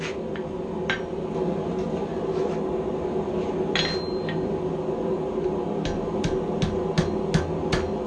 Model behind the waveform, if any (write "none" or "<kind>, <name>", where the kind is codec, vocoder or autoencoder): none